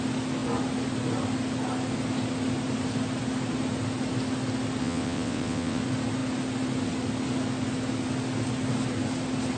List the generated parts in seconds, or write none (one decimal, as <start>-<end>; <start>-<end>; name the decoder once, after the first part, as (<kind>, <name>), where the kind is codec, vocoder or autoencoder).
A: 4.8-5.8 (vocoder, WaveNeXt)